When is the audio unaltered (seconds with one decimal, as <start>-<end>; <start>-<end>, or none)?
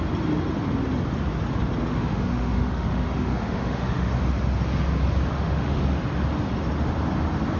0.0-1.9; 4.1-5.3; 5.8-7.6